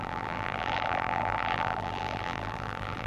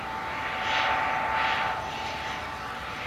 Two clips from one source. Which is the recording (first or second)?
second